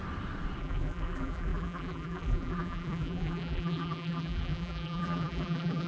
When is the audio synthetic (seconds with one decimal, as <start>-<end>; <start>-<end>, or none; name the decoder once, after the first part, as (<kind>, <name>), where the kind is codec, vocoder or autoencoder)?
0.6-5.9 (vocoder, BigVGAN v2)